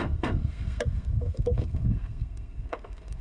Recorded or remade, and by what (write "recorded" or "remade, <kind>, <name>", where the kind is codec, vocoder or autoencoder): remade, codec, SNAC